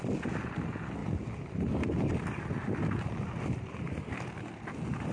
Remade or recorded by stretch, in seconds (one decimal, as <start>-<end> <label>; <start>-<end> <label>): 0.0-5.1 recorded

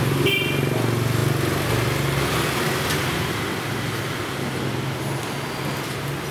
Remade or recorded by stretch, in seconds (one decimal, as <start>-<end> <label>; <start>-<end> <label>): 0.0-6.3 recorded

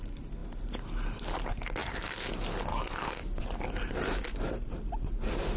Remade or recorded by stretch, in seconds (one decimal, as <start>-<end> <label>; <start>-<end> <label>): 0.0-2.7 recorded; 2.7-3.2 remade; 3.2-5.6 recorded

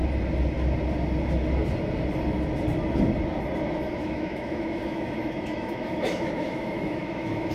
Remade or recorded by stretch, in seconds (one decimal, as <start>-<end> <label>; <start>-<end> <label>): 0.0-4.0 recorded; 4.0-7.5 remade

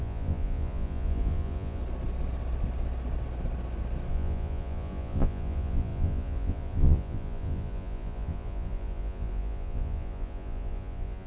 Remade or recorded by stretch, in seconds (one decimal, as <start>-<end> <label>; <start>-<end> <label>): 0.0-1.8 remade; 1.8-4.1 recorded; 4.1-11.3 remade

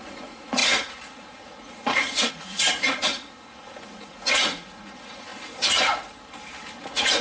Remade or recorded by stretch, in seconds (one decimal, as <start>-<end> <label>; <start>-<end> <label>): 0.0-5.3 remade; 5.3-6.8 recorded; 6.8-7.2 remade